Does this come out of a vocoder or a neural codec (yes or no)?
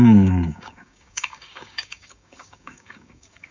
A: yes